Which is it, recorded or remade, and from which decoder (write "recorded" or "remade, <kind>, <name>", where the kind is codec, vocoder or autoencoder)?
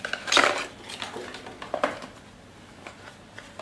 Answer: recorded